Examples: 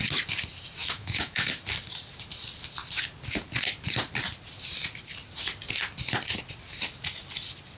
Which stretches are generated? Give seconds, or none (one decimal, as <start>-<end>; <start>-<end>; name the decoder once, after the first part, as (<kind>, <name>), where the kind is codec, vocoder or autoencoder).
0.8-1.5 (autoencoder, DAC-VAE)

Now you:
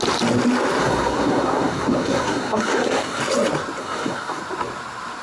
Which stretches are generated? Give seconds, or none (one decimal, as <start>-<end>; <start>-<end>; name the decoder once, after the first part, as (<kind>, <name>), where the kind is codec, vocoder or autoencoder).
0.8-3.2 (codec, SNAC); 3.8-4.4

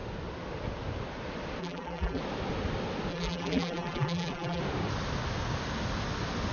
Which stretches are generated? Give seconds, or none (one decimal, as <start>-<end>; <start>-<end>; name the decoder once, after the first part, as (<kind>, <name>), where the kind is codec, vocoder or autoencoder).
1.6-2.2 (vocoder, BigVGAN v2); 3.1-4.6

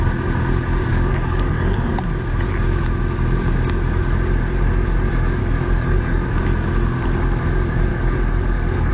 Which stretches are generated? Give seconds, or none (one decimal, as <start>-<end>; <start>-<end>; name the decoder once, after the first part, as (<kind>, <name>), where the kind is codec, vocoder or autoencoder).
0.9-1.9 (codec, DAC); 5.4-6.3; 7.9-8.9

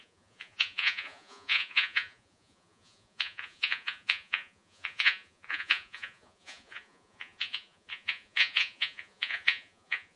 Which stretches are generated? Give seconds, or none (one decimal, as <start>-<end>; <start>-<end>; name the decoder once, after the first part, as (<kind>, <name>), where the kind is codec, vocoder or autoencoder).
0.0-10.2 (vocoder, Vocos)

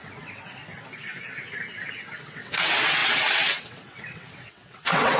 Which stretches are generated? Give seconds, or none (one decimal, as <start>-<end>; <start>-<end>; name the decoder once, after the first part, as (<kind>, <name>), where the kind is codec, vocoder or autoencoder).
0.0-0.6 (vocoder, WaveNeXt); 2.2-5.2